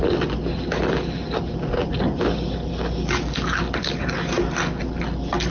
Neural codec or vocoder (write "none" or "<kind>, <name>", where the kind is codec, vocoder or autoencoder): none